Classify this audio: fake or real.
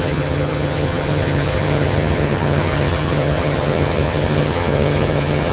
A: fake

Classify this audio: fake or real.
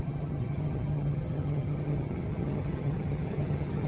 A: fake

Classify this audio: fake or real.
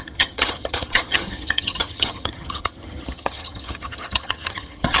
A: fake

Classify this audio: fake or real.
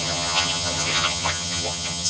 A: fake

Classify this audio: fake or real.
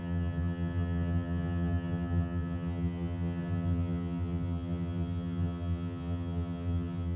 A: fake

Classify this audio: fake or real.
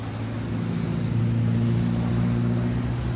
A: real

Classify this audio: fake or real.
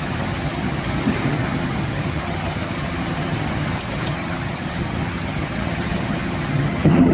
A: fake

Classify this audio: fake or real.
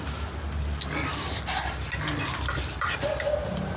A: real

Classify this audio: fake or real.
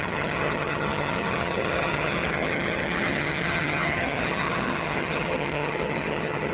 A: fake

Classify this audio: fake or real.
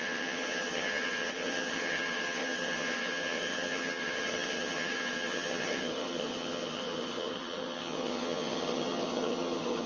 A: fake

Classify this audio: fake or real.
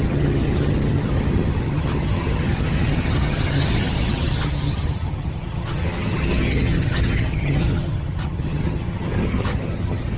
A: fake